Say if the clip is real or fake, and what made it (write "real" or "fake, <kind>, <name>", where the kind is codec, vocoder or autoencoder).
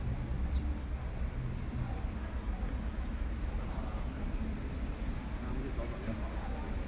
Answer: real